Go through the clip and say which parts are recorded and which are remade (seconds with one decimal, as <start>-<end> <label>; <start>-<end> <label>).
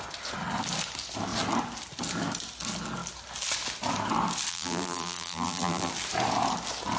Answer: 0.0-4.5 recorded; 4.5-5.9 remade; 5.9-7.0 recorded